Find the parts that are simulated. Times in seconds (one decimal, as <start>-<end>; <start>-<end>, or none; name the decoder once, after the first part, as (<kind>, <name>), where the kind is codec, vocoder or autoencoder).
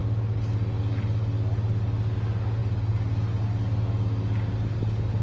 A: none